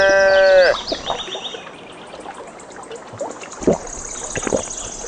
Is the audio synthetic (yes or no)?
no